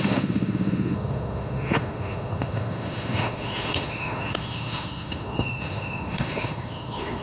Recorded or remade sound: remade